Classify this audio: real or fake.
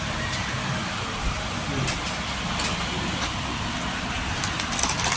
real